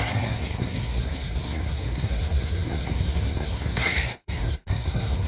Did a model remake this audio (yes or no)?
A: yes